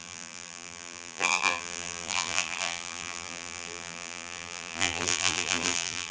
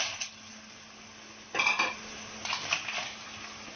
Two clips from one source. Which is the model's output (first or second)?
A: first